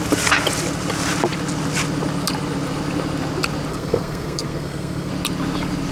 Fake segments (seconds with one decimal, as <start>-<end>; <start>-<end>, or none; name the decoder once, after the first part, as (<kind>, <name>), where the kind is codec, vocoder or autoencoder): 3.7-5.1 (codec, SNAC)